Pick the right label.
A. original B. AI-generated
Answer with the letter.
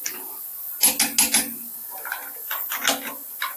A